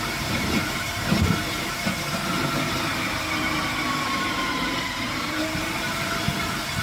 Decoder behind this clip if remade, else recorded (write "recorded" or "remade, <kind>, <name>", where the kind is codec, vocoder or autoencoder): remade, vocoder, BigVGAN v2